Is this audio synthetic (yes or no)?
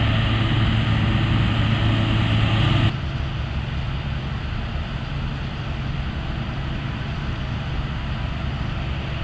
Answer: no